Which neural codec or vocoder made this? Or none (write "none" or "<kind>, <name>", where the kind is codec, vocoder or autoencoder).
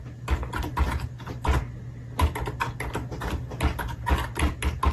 none